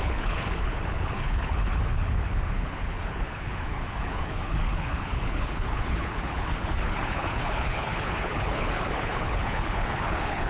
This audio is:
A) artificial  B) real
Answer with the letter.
A